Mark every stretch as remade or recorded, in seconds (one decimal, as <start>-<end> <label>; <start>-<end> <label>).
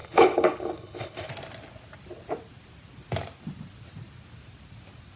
0.0-1.3 remade; 1.3-5.2 recorded